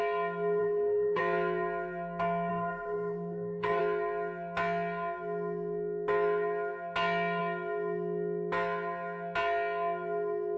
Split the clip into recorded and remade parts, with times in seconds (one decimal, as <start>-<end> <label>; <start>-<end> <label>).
0.0-0.6 recorded; 0.6-1.2 remade; 1.2-2.5 recorded; 2.5-3.8 remade; 3.8-10.6 recorded